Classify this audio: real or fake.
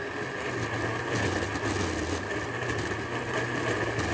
real